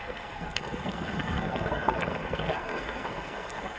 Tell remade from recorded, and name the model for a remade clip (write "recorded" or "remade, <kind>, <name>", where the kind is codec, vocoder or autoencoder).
remade, codec, SNAC